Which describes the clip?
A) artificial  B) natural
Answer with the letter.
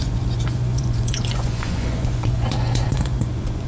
A